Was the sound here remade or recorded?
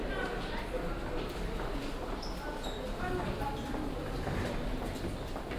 recorded